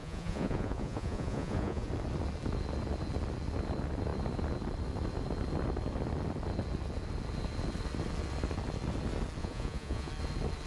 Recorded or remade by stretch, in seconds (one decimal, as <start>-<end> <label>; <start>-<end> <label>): 0.0-1.9 remade; 1.9-9.4 recorded; 9.4-10.1 remade; 10.1-10.7 recorded